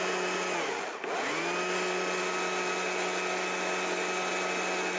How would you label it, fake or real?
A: real